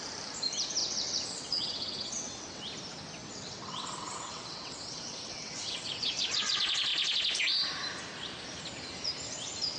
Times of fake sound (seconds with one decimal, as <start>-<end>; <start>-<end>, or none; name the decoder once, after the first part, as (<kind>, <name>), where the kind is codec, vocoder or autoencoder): 0.8-2.6 (vocoder, WaveNeXt); 3.2-6.2